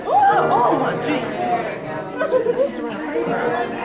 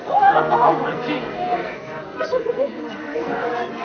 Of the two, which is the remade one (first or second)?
second